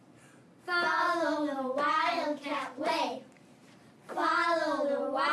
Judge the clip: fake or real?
fake